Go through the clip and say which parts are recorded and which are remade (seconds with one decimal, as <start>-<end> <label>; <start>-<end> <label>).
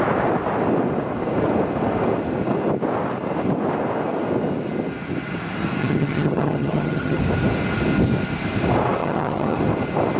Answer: 0.0-5.8 recorded; 5.8-7.2 remade; 7.2-9.0 recorded; 9.0-9.6 remade; 9.6-10.2 recorded